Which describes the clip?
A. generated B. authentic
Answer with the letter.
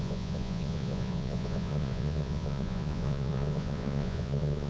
A